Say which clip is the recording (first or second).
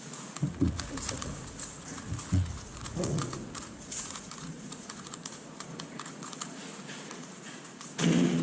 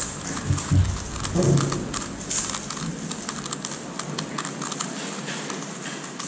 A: second